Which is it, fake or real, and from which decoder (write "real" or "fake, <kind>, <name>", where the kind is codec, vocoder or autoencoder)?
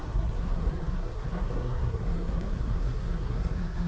fake, codec, SNAC